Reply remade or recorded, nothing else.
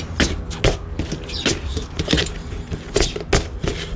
recorded